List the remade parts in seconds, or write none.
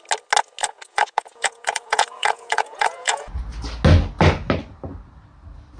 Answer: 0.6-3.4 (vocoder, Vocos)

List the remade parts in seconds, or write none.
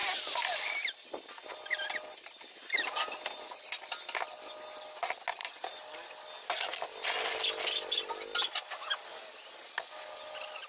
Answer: none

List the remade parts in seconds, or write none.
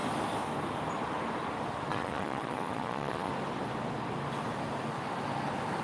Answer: 1.9-3.3 (vocoder, Vocos)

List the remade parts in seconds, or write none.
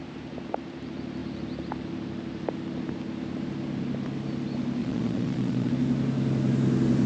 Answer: 4.8-5.7 (vocoder, Vocos)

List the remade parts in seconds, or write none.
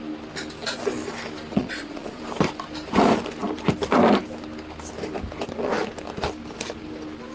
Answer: 1.5-2.2 (vocoder, Vocos)